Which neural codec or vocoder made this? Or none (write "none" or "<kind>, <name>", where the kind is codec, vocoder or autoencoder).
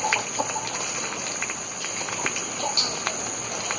none